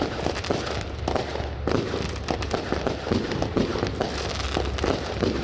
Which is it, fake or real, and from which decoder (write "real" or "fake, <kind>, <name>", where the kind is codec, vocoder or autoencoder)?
real